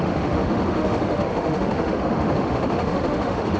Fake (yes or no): yes